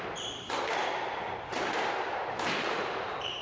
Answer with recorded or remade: remade